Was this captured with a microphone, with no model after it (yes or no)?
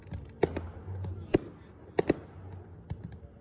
yes